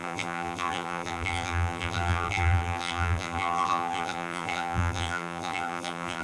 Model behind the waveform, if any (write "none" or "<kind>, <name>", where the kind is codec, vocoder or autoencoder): vocoder, BigVGAN v2